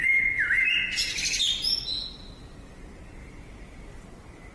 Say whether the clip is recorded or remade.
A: recorded